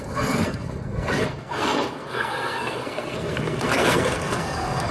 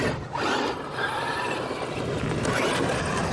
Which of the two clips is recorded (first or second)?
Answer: second